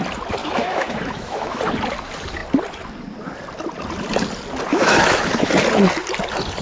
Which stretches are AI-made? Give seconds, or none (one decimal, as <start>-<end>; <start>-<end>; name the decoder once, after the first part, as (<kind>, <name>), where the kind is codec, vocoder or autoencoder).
0.4-1.6 (autoencoder, DAC-VAE); 4.7-5.5